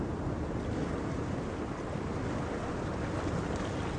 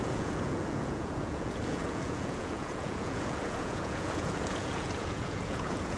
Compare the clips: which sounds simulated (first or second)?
second